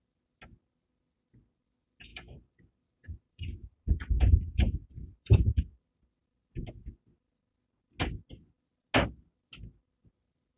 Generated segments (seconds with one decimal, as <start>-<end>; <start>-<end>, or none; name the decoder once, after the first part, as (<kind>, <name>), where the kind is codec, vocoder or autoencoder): 2.1-5.4 (vocoder, BigVGAN v2)